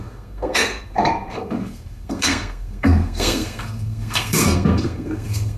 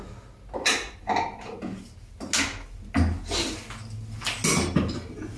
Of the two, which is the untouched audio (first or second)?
second